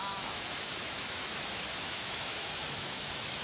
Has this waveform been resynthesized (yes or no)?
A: yes